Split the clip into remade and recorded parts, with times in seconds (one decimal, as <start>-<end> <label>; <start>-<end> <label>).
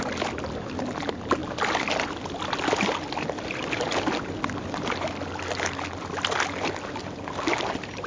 0.0-8.1 recorded